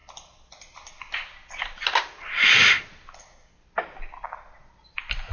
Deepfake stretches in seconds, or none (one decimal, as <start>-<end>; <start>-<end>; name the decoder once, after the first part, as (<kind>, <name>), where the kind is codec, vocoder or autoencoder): none